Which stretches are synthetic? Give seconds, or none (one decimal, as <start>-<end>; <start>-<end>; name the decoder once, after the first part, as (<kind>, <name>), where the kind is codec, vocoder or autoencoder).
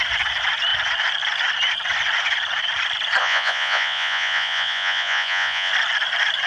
3.2-5.7 (vocoder, Vocos)